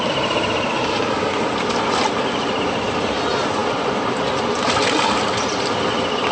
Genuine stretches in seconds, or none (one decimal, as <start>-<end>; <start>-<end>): 0.0-6.3